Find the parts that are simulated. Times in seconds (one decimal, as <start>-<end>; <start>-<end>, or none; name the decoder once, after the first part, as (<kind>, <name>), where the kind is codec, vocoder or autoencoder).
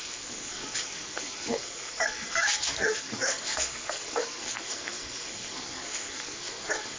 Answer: 0.0-7.0 (codec, SNAC)